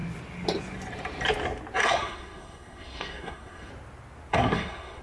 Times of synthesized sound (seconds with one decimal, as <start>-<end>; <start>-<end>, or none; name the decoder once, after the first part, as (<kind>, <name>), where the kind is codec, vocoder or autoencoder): 1.8-3.7 (codec, SNAC); 4.3-5.0